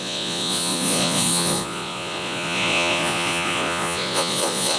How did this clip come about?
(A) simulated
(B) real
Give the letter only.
A